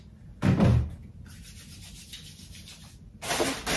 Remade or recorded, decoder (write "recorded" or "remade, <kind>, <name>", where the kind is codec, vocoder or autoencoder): recorded